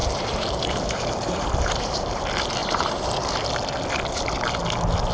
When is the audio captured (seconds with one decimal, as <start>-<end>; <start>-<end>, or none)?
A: 2.2-2.6; 3.1-5.1